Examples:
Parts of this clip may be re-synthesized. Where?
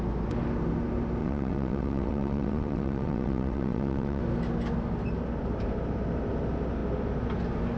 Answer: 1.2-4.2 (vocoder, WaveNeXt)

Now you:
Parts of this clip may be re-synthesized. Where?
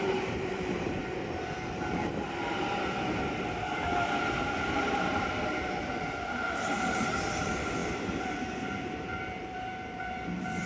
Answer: 0.0-1.0 (vocoder, BigVGAN v2); 4.8-10.7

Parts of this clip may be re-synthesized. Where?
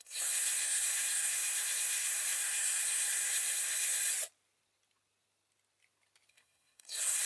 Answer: 0.0-4.0 (codec, SNAC); 6.3-7.3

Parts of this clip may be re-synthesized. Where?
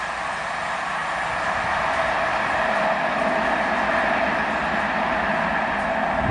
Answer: none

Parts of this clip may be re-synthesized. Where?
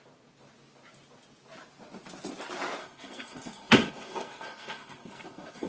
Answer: 2.8-5.7 (codec, SNAC)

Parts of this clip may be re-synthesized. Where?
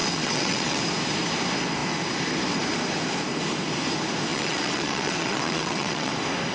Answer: 0.0-0.8 (vocoder, WaveNeXt); 4.3-6.1